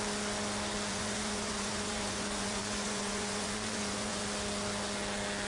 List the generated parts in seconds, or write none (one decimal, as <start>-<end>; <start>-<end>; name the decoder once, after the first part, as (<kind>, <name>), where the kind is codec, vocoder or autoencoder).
0.9-4.2 (vocoder, Vocos)